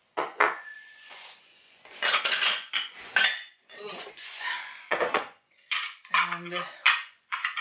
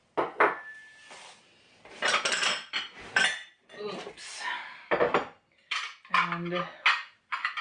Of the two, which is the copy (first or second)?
first